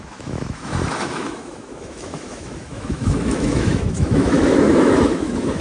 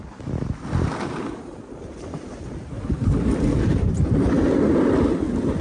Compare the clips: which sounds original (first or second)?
second